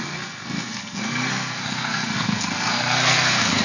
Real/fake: fake